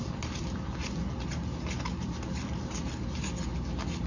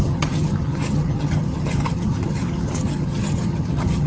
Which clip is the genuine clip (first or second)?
first